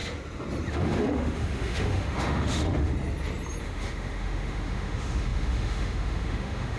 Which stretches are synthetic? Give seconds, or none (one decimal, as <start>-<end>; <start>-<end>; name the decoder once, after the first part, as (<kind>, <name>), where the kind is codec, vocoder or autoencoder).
0.7-2.9 (autoencoder, DAC-VAE); 3.6-6.8

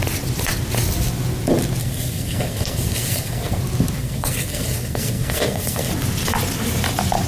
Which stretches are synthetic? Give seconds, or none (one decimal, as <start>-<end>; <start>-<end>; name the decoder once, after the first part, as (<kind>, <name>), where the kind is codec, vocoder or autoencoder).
1.8-3.6 (codec, SNAC); 4.0-5.9

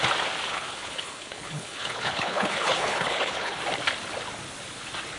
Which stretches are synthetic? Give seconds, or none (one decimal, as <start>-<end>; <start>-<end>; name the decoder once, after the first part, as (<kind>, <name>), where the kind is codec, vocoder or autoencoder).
0.5-3.6 (codec, HILCodec)

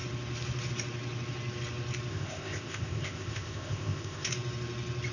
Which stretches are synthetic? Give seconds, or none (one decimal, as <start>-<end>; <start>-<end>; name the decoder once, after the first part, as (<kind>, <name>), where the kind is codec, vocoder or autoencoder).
2.1-4.3 (codec, ZipCodec)

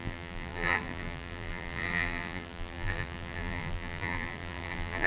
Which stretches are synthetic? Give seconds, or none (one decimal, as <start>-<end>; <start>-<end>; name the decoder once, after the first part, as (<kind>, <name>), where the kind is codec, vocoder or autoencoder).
0.0-5.1 (vocoder, BigVGAN v2)

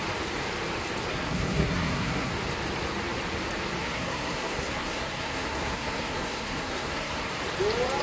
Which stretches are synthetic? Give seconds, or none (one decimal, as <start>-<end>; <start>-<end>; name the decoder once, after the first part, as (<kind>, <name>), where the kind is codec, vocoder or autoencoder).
1.1-2.3 (codec, SNAC); 3.8-7.3

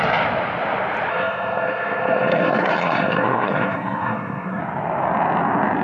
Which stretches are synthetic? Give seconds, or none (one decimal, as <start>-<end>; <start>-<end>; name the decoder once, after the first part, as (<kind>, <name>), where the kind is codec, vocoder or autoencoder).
1.1-4.6 (codec, SNAC)